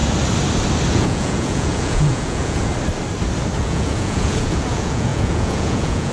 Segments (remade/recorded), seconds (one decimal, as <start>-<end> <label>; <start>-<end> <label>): 0.0-0.9 recorded; 0.9-2.7 remade; 2.7-3.6 recorded; 3.6-6.1 remade